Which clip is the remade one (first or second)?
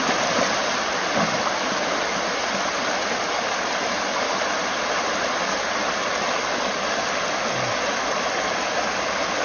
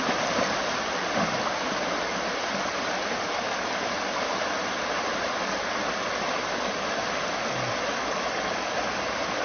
second